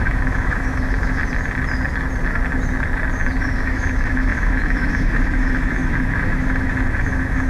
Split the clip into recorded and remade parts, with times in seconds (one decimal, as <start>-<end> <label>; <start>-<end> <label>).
0.0-1.2 remade; 1.2-3.4 recorded; 3.4-7.5 remade